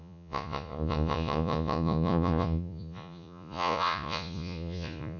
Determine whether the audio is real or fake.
fake